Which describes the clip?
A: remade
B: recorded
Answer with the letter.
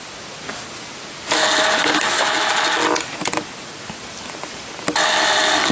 B